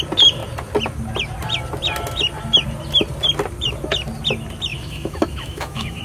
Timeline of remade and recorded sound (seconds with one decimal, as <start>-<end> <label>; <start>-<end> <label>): 0.0-4.7 recorded; 4.7-6.0 remade